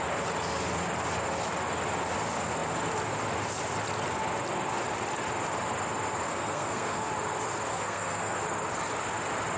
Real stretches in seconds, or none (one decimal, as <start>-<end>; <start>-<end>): 0.0-6.3; 7.1-7.7; 8.4-9.6